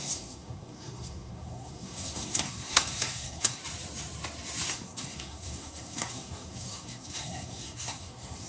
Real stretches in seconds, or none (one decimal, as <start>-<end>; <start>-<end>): 3.6-4.7